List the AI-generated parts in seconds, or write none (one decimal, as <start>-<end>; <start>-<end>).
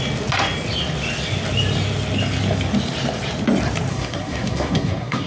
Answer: 3.9-5.3